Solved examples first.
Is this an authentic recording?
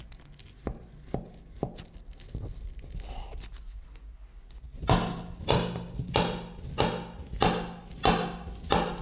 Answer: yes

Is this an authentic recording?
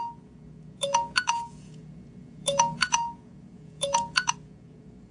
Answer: no